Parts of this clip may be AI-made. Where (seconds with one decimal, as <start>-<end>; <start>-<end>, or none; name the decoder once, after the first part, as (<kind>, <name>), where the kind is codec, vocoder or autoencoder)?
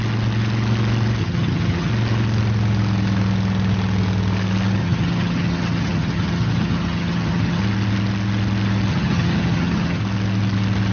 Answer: 1.2-1.9 (vocoder, HiFi-GAN); 4.8-7.6; 8.9-10.0